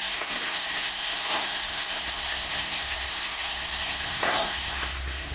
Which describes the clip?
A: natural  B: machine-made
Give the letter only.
B